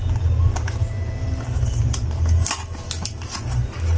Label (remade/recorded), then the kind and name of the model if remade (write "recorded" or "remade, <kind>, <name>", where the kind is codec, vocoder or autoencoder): recorded